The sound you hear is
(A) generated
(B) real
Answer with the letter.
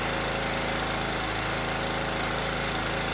B